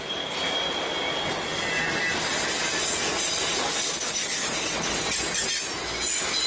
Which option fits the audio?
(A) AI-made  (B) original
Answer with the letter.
B